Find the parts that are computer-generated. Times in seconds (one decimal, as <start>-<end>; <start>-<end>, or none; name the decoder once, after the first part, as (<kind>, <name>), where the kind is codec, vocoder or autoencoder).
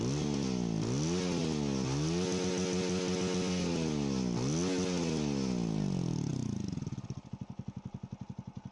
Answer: none